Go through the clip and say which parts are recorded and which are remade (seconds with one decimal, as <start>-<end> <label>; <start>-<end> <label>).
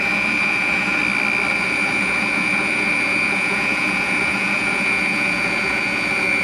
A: 0.0-1.0 remade; 1.0-1.5 recorded; 1.5-6.4 remade